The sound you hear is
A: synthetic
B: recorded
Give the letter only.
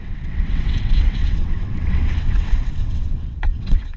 A